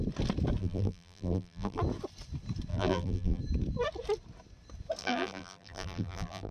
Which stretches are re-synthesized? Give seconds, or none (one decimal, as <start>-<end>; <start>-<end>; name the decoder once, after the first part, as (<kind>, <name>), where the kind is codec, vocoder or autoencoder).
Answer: 0.6-1.8 (vocoder, BigVGAN v2); 2.7-3.4; 5.0-6.5